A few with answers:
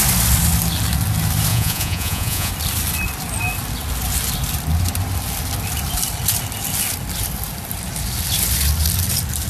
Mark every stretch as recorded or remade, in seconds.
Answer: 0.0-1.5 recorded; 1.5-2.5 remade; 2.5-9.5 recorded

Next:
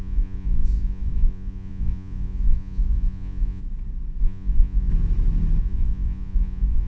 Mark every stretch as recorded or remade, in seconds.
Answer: 0.0-3.6 remade; 3.6-4.2 recorded; 4.2-4.9 remade; 4.9-5.6 recorded; 5.6-6.9 remade

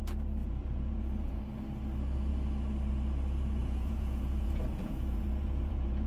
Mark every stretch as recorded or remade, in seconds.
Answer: 0.0-0.4 recorded; 0.4-1.4 remade; 1.4-3.6 recorded; 3.6-6.1 remade

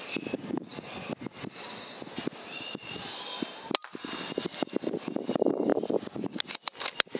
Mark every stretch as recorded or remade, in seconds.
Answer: 0.0-7.2 recorded

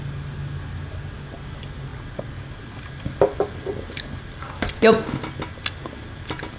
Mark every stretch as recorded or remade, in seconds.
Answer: 0.0-6.6 recorded

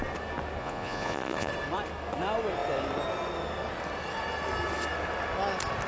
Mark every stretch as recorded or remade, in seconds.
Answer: 0.0-0.6 recorded; 0.6-1.5 remade; 1.5-5.9 recorded

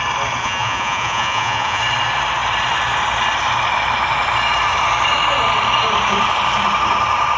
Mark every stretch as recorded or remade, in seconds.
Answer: 0.0-0.4 recorded; 0.4-1.8 remade; 1.8-7.4 recorded

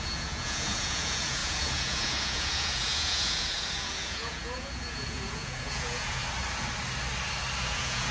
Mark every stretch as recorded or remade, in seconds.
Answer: 0.0-6.2 remade; 6.2-7.6 recorded; 7.6-8.1 remade